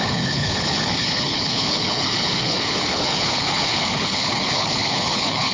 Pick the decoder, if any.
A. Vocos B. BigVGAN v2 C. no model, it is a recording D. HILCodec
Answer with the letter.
D